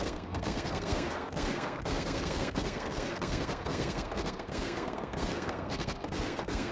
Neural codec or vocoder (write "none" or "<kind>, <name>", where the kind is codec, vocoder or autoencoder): codec, SNAC